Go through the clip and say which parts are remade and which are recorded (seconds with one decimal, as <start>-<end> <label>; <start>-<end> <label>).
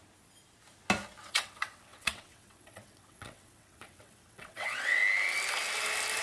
0.0-1.2 recorded; 1.2-5.0 remade; 5.0-6.2 recorded